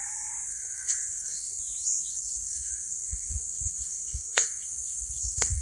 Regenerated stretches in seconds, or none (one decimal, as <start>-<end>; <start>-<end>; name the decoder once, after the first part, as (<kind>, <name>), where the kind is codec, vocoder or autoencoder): 0.5-1.6 (codec, SNAC); 2.1-5.6